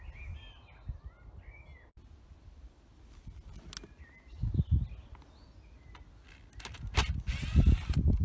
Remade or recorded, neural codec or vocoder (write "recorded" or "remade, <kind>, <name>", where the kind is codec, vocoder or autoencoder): recorded